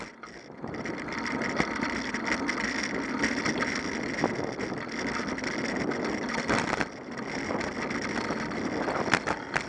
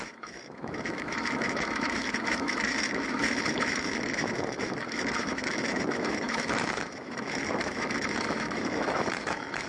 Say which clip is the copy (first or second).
second